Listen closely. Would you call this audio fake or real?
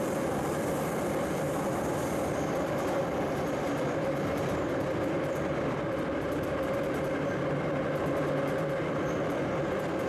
fake